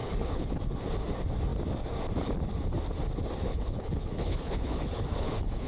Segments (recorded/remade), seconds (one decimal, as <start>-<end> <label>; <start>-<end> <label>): 0.0-0.6 remade; 0.6-3.5 recorded; 3.5-5.7 remade